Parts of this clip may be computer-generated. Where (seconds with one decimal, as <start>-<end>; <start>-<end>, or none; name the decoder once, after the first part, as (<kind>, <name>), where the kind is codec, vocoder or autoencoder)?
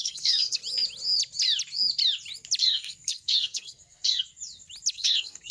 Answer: 0.0-0.6 (codec, SNAC); 2.6-4.3; 4.9-5.5